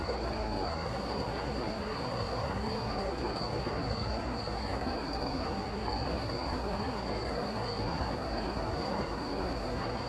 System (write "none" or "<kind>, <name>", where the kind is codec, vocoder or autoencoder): codec, SNAC